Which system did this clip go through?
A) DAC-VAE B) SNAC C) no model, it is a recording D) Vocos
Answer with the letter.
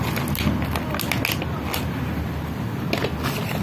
C